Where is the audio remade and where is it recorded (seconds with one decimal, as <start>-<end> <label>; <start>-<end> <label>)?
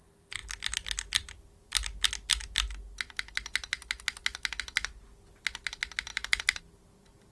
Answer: 0.0-6.1 recorded; 6.1-6.6 remade; 6.6-7.3 recorded